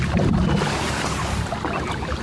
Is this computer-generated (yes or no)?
no